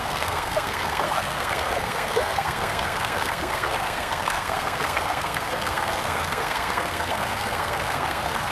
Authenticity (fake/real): fake